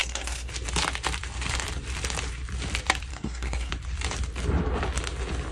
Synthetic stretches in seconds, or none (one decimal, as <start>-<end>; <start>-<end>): 0.0-0.5; 3.1-3.7